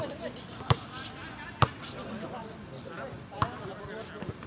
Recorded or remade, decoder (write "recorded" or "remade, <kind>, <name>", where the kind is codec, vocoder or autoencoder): recorded